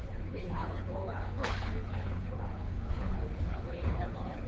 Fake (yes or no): yes